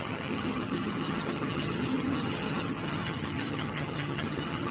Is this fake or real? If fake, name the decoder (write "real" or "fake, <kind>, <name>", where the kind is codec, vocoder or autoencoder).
fake, vocoder, HiFi-GAN